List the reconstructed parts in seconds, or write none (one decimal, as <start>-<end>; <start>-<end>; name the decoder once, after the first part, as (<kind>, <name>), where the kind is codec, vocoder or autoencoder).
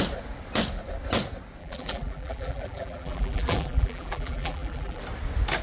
1.6-5.0 (vocoder, BigVGAN v2)